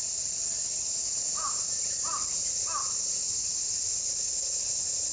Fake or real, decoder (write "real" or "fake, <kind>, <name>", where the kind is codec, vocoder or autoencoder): real